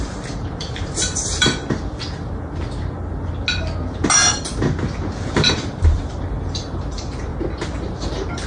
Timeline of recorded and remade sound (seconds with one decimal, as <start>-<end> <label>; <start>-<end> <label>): 0.0-1.6 remade; 1.6-5.3 recorded; 5.3-7.3 remade; 7.3-8.5 recorded